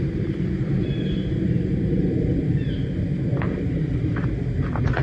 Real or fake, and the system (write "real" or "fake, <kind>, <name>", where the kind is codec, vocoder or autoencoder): fake, vocoder, BigVGAN v2